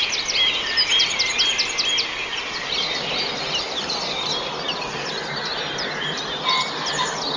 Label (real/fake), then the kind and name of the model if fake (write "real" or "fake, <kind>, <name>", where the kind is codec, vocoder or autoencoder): real